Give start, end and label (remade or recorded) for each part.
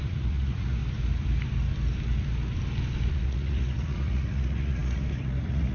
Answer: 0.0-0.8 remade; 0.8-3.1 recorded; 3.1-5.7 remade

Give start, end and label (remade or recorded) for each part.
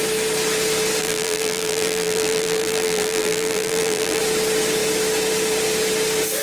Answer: 0.0-1.0 recorded; 1.0-4.2 remade; 4.2-6.4 recorded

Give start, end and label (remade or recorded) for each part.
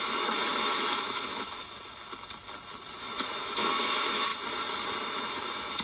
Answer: 0.0-1.6 remade; 1.6-3.0 recorded; 3.0-4.3 remade; 4.3-5.0 recorded; 5.0-5.8 remade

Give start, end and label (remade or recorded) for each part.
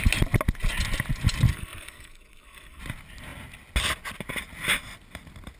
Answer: 0.0-1.5 recorded; 1.5-2.8 remade; 2.8-5.6 recorded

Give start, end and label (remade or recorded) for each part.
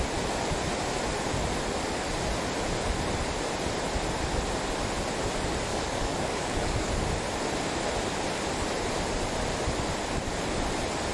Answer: 0.0-5.7 recorded; 5.7-6.9 remade; 6.9-11.1 recorded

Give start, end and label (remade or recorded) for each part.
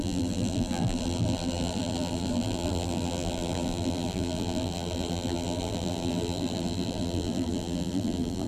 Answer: 0.0-8.5 remade